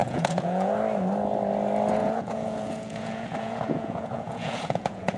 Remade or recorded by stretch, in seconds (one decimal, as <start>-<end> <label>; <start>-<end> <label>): 0.0-0.7 remade; 0.7-2.0 recorded; 2.0-5.2 remade